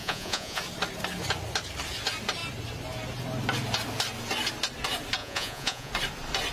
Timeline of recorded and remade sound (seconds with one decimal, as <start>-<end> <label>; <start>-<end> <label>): 0.0-0.6 remade; 0.6-5.2 recorded; 5.2-5.9 remade; 5.9-6.5 recorded